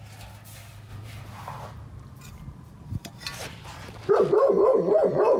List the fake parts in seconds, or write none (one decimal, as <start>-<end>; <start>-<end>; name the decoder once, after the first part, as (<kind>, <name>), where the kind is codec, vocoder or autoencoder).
0.9-4.1 (vocoder, BigVGAN v2)